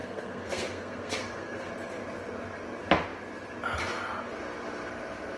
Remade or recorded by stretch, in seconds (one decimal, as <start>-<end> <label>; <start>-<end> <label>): 0.0-1.7 remade; 1.7-5.4 recorded